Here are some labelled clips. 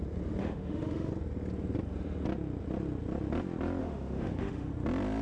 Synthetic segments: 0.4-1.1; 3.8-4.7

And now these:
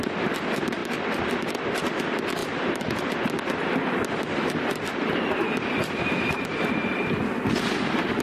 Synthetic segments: none

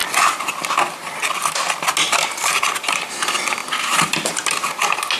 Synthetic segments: none

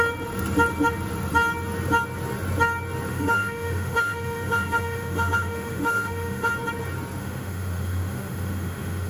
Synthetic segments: 3.1-6.5; 7.2-9.1

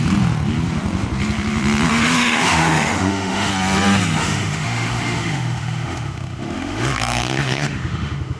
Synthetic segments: 1.9-3.5; 4.2-8.4

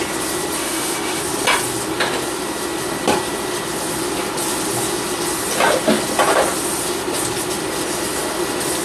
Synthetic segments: 0.6-1.2